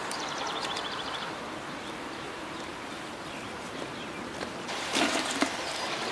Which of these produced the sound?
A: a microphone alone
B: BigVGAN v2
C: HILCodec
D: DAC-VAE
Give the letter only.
B